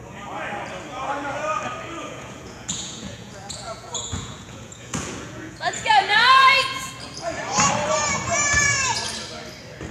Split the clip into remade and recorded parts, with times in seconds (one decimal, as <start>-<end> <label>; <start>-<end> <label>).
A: 0.0-2.0 recorded; 2.0-6.9 remade; 6.9-9.9 recorded